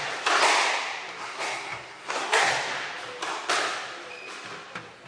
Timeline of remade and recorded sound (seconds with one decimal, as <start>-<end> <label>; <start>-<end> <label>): 0.0-1.2 recorded; 1.2-2.5 remade; 2.5-5.1 recorded